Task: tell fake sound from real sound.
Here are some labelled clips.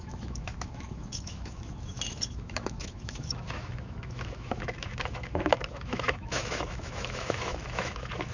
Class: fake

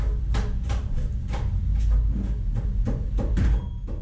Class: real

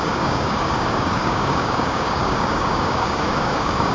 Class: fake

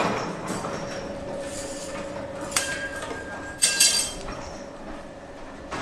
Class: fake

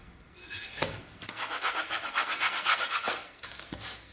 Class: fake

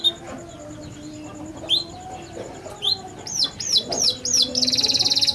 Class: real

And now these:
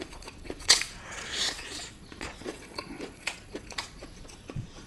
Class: fake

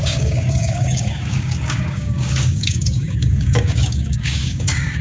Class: fake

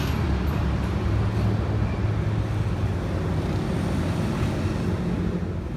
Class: real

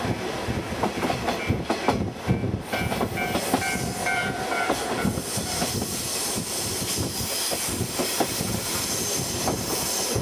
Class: real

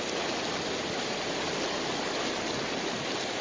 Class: real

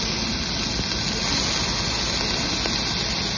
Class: real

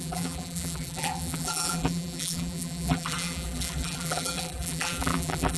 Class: fake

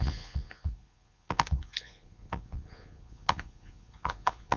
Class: fake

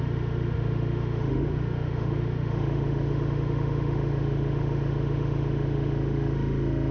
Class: fake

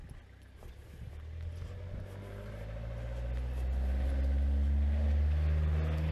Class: real